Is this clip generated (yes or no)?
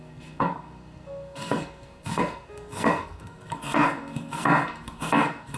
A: yes